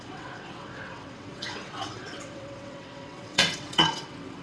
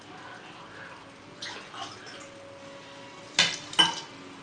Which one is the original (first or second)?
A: second